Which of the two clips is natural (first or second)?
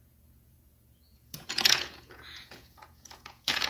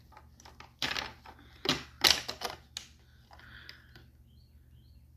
second